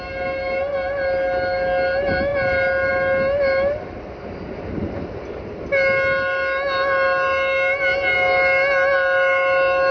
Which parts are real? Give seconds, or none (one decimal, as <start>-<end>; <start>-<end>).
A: 0.0-9.9

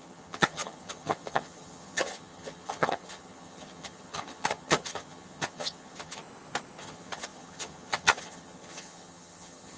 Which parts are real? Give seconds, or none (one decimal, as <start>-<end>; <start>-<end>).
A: 6.2-6.8

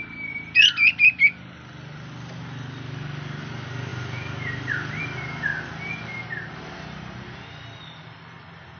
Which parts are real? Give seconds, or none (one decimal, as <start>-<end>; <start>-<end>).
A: 0.0-8.8

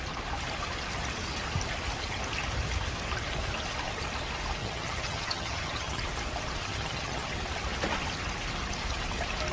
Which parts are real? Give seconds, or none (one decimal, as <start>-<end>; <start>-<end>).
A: 0.0-4.6; 6.0-6.6; 7.3-9.5

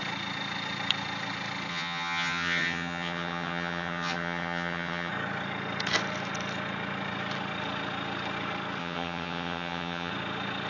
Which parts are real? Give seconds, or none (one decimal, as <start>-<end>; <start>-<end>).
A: 0.0-1.7; 5.1-8.8; 10.1-10.7

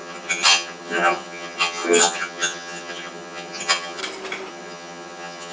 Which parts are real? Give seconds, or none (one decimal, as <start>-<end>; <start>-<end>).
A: 4.0-4.5

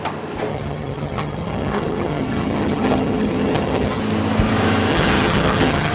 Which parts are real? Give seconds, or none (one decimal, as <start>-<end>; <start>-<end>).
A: 0.0-0.5; 4.0-4.9

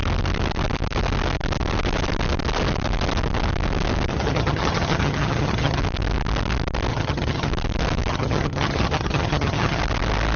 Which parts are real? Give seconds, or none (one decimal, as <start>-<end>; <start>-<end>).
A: 0.0-4.1; 5.8-6.9; 7.5-8.1; 9.8-10.4